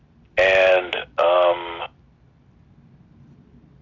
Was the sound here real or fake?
real